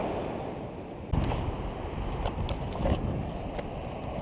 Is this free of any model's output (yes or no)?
yes